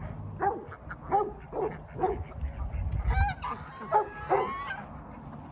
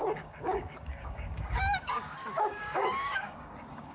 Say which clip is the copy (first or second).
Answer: second